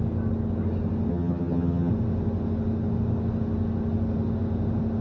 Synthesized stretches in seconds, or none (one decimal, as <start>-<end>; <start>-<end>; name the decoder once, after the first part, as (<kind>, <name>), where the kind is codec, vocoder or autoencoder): 1.1-1.9 (vocoder, HiFi-GAN)